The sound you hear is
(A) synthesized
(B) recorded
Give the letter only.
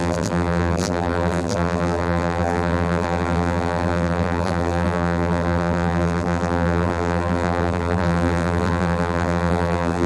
A